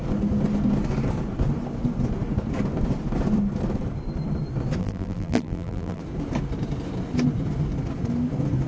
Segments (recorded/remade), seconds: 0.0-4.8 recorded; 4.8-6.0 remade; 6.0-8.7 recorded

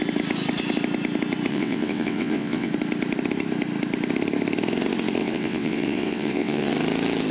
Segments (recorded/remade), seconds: 0.0-1.5 recorded; 1.5-2.7 remade; 2.7-5.2 recorded; 5.2-6.7 remade; 6.7-7.3 recorded

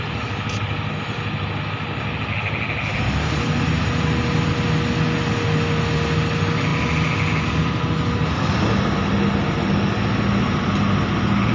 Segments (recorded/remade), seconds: 0.0-11.5 recorded

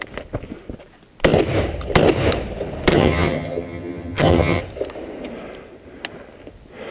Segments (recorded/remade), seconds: 0.0-2.9 recorded; 2.9-4.6 remade; 4.6-6.9 recorded

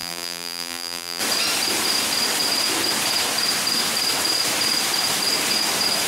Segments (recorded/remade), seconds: 0.0-1.2 remade; 1.2-6.1 recorded